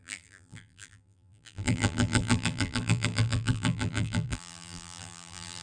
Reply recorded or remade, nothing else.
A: remade